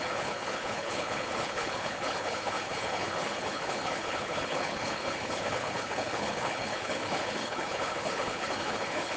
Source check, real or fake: fake